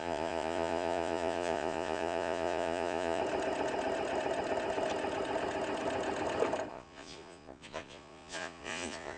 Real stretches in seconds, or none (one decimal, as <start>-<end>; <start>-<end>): 3.2-6.7